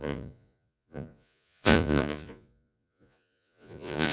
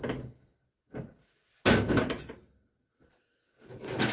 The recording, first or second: second